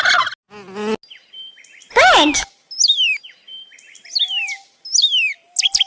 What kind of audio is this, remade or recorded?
recorded